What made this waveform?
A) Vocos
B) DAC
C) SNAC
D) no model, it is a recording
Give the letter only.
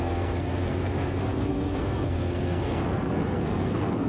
C